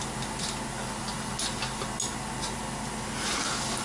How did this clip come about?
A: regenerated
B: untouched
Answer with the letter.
B